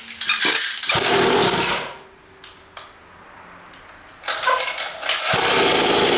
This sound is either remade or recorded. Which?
recorded